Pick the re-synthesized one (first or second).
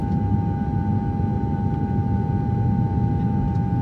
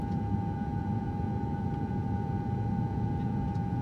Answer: second